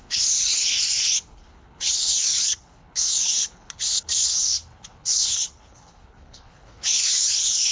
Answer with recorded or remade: remade